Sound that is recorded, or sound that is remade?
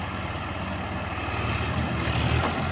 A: recorded